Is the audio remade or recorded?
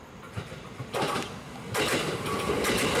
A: recorded